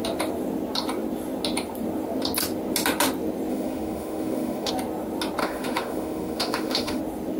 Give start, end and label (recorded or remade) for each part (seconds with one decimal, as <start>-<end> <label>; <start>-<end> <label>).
0.0-3.5 recorded; 3.5-4.7 remade; 4.7-5.4 recorded; 5.4-7.0 remade; 7.0-7.4 recorded